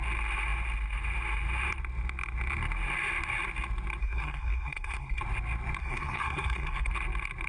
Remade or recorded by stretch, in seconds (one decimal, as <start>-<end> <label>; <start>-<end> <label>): 0.0-4.0 recorded; 4.0-5.2 remade; 5.2-5.8 recorded; 5.8-6.9 remade; 6.9-7.5 recorded